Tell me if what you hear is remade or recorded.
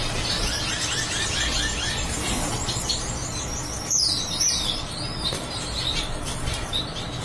remade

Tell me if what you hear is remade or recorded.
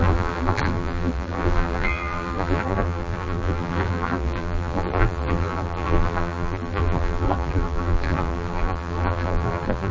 remade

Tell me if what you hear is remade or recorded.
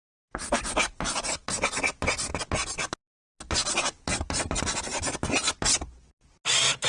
recorded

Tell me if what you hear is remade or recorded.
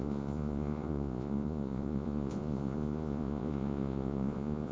remade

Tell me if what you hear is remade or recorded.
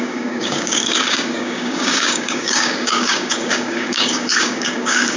remade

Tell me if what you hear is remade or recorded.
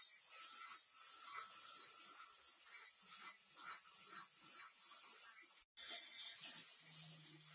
recorded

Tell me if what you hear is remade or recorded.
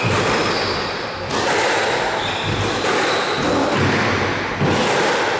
recorded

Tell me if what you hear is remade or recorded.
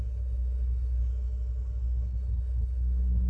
recorded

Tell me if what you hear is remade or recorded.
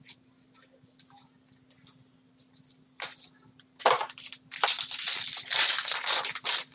recorded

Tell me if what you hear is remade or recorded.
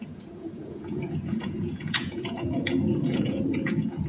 remade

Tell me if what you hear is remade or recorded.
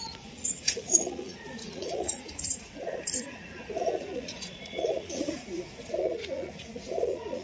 remade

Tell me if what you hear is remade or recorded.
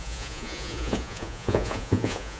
remade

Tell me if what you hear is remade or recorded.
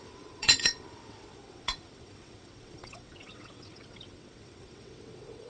remade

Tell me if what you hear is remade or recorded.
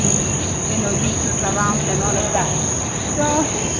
recorded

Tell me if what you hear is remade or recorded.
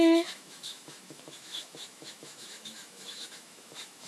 remade